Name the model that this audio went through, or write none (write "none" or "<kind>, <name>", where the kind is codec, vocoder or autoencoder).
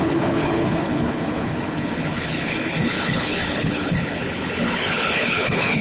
codec, HILCodec